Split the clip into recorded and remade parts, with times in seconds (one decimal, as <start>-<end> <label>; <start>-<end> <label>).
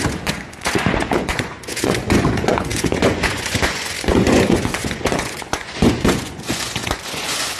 0.0-7.6 remade